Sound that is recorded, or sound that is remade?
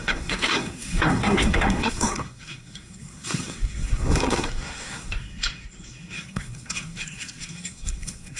remade